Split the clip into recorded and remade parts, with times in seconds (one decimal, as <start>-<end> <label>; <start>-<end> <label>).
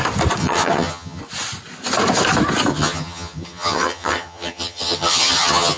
0.0-0.4 recorded; 0.4-1.2 remade; 1.2-2.7 recorded; 2.7-5.8 remade